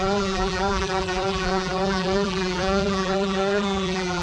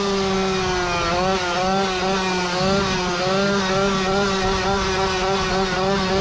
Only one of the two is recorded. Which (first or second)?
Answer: second